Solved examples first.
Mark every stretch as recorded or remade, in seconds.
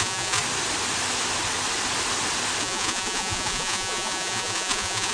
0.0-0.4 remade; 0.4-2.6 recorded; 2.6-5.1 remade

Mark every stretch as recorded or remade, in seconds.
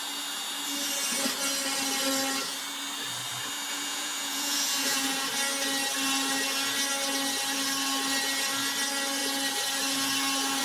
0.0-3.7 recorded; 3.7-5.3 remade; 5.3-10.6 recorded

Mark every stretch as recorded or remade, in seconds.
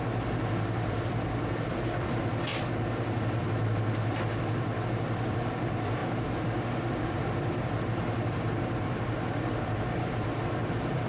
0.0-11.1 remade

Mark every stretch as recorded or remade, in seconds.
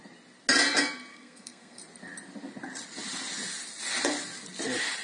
0.0-1.1 recorded; 1.1-1.8 remade; 1.8-5.0 recorded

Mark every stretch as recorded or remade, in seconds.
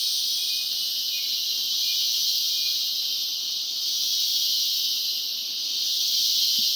0.0-6.8 recorded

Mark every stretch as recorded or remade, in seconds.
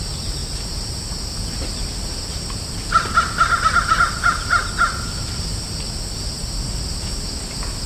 0.0-7.9 recorded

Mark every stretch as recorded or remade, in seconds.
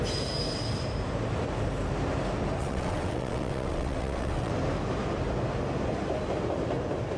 0.0-2.6 recorded; 2.6-4.5 remade; 4.5-7.2 recorded